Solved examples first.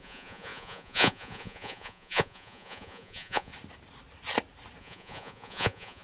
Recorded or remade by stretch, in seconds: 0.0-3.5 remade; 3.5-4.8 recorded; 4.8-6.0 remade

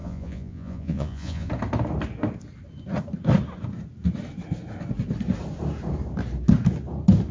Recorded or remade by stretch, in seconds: 0.0-1.5 remade; 1.5-7.3 recorded